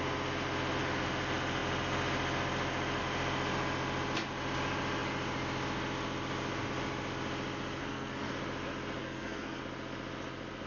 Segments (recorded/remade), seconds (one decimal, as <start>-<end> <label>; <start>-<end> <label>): 0.0-7.8 recorded; 7.8-8.3 remade; 8.3-9.0 recorded; 9.0-9.6 remade; 9.6-10.7 recorded

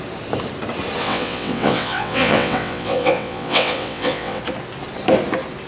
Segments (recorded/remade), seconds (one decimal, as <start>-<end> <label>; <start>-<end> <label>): 0.0-1.0 recorded; 1.0-4.4 remade; 4.4-5.7 recorded